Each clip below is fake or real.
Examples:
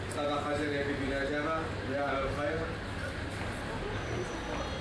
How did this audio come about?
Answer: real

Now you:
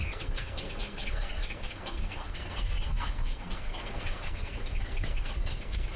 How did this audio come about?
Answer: fake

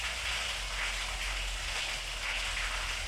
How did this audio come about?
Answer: real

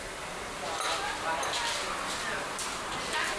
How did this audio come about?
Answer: real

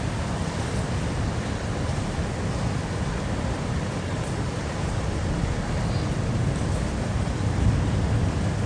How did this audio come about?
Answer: real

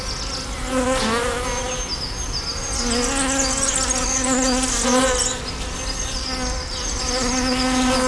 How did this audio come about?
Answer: real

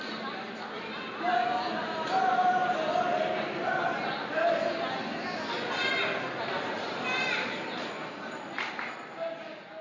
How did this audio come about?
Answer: real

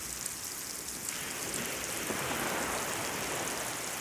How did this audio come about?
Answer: real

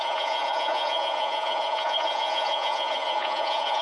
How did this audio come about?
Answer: fake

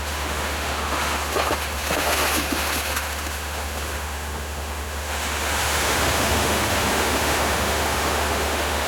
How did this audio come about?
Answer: fake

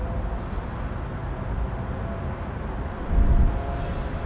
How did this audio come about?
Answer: real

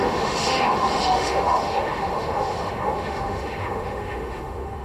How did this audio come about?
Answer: fake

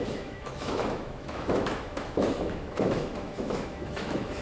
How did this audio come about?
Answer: fake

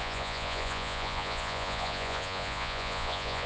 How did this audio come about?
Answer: fake